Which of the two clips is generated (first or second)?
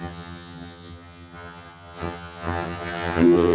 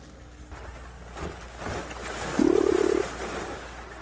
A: first